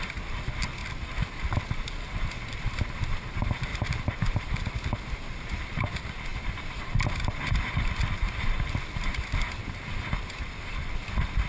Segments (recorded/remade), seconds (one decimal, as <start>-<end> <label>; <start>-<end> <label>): 0.0-11.5 recorded